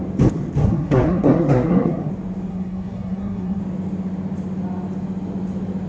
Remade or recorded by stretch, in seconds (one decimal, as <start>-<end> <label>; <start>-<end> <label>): 0.0-0.6 recorded; 0.6-2.1 remade; 2.1-2.5 recorded; 2.5-3.6 remade; 3.6-5.9 recorded